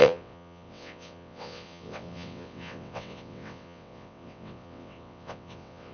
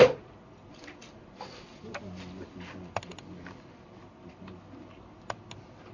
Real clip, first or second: second